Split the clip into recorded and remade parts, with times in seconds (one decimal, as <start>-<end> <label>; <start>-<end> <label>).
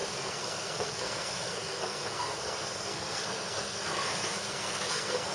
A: 0.0-5.3 remade